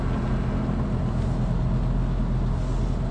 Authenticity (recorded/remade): recorded